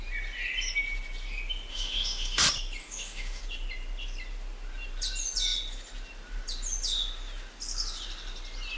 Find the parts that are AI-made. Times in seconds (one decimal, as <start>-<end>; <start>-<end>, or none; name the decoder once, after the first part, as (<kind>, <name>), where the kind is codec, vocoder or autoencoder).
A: 1.7-2.4 (autoencoder, DAC-VAE); 2.8-3.4